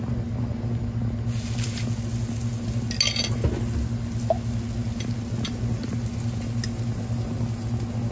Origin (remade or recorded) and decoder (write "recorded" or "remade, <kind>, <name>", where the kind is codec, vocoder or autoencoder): recorded